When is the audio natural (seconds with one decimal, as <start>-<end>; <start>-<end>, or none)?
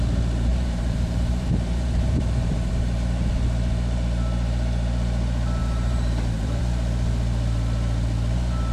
0.0-0.5; 2.7-5.6; 6.6-8.7